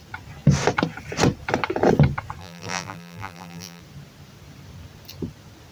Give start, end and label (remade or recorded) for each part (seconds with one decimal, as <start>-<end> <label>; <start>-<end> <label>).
0.0-2.4 recorded; 2.4-3.8 remade; 3.8-5.7 recorded